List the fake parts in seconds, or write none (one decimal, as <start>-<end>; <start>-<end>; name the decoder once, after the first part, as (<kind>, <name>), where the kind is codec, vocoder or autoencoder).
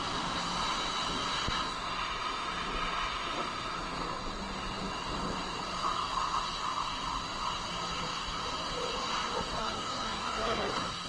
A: 9.6-10.7 (codec, SNAC)